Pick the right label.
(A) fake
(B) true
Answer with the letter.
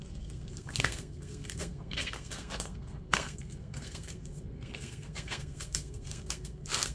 A